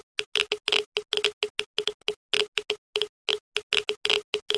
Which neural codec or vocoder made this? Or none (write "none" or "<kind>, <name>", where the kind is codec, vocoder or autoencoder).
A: none